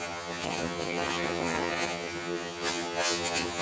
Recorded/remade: remade